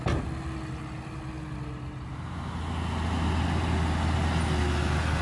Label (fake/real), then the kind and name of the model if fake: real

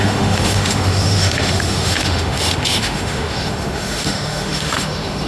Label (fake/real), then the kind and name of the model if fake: fake, autoencoder, DAC-VAE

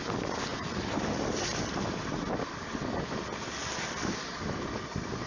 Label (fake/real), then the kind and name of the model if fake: real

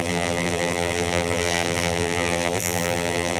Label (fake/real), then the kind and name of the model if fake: fake, vocoder, BigVGAN v2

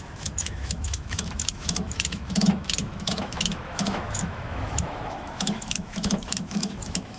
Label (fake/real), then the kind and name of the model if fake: fake, autoencoder, DAC-VAE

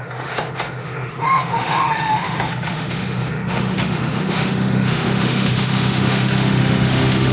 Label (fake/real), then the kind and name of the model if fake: fake, autoencoder, DAC-VAE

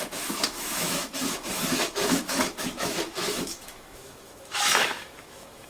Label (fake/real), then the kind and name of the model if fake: fake, autoencoder, DAC-VAE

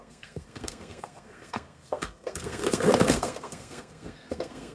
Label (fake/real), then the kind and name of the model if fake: fake, codec, SNAC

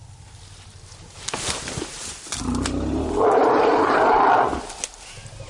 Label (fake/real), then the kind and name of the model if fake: real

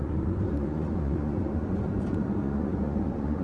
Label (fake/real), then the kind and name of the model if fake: fake, vocoder, Vocos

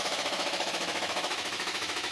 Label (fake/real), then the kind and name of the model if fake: fake, autoencoder, DAC-VAE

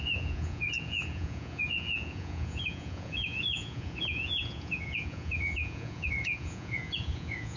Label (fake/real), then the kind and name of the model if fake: fake, vocoder, Vocos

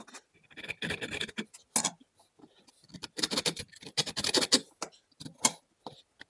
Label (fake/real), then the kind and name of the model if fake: real